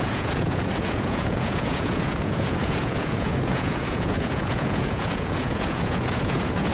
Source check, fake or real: fake